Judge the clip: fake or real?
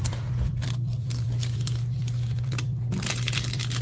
fake